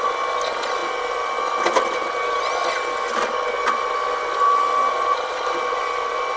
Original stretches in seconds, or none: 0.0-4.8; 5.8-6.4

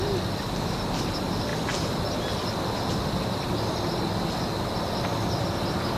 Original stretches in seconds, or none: 0.0-6.0

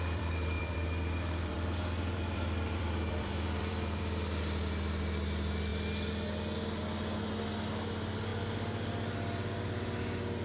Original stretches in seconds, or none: 4.4-10.4

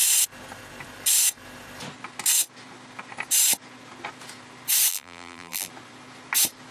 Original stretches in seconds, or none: 0.0-4.9; 5.7-6.7

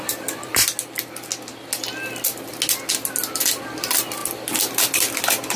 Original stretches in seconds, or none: 0.6-3.6; 4.2-4.7